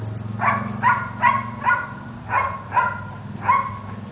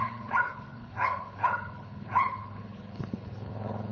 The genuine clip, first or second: first